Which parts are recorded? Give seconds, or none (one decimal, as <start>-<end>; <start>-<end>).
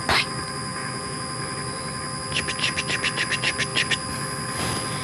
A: 0.0-0.7; 1.2-5.0